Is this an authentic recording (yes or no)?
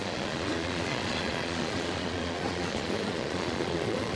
no